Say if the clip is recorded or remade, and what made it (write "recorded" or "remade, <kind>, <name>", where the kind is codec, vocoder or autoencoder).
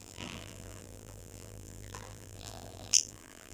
remade, vocoder, BigVGAN v2